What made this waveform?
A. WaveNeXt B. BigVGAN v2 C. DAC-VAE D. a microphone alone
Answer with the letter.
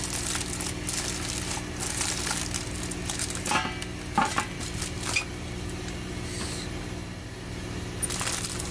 D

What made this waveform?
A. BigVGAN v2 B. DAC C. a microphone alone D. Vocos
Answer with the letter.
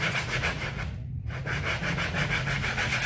D